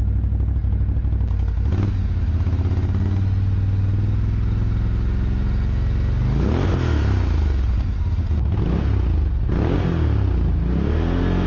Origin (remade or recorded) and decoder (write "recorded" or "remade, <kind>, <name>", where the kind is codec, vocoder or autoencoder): recorded